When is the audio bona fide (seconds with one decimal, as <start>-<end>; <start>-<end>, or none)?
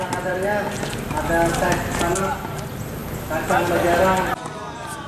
0.0-5.1